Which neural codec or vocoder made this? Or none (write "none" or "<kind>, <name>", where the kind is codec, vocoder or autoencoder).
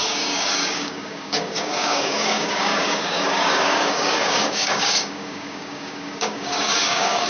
codec, DAC